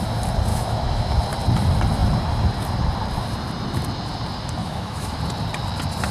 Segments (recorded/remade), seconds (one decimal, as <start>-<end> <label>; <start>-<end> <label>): 0.0-0.5 recorded; 0.5-1.2 remade; 1.2-4.6 recorded; 4.6-5.2 remade; 5.2-6.1 recorded